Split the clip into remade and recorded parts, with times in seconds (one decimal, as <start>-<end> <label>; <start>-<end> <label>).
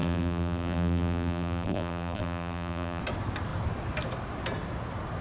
0.0-3.0 remade; 3.0-5.2 recorded